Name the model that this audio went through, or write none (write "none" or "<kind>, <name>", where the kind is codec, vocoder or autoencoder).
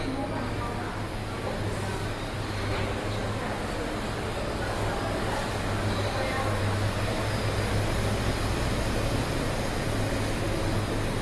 none